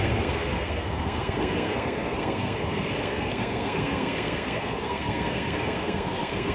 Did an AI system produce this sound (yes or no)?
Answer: yes